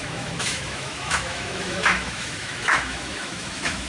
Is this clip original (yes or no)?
no